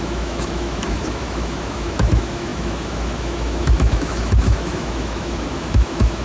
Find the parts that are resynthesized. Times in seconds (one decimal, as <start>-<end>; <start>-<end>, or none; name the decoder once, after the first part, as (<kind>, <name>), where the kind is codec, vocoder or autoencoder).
0.0-6.2 (autoencoder, DAC-VAE)